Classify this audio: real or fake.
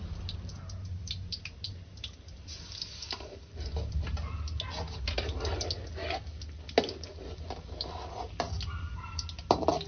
real